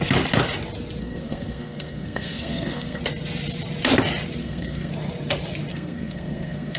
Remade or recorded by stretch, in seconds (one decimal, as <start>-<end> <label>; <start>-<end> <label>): 0.0-1.0 recorded; 1.0-3.0 remade; 3.0-4.4 recorded; 4.4-4.9 remade; 4.9-5.7 recorded; 5.7-6.8 remade